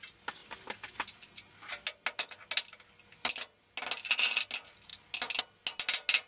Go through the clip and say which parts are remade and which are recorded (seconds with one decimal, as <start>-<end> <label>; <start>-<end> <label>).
0.0-6.3 recorded